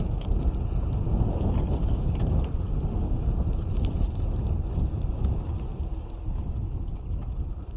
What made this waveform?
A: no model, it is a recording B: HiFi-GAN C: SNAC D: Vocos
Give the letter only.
A